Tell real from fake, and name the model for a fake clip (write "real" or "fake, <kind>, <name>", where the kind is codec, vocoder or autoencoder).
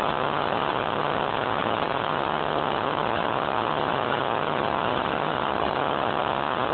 fake, vocoder, HiFi-GAN